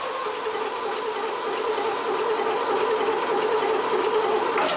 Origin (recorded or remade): recorded